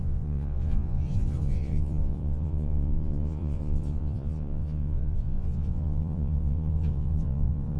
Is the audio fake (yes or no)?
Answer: yes